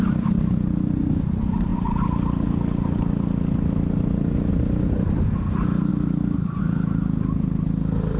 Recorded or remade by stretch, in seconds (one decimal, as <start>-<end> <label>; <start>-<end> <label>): 0.0-8.2 recorded